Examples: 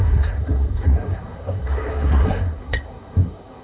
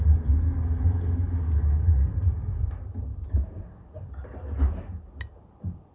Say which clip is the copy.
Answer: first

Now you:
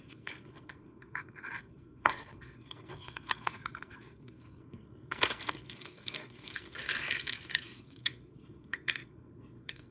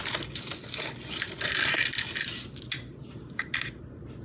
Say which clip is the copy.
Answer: first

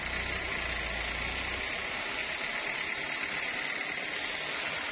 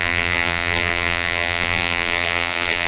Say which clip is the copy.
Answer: second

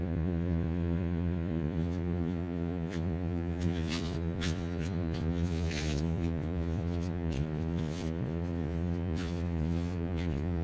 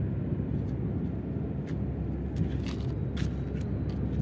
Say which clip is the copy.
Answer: first